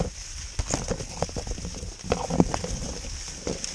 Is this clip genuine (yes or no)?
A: yes